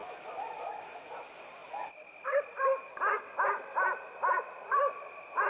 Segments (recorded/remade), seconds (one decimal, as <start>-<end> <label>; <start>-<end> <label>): 0.0-1.1 remade; 1.1-5.5 recorded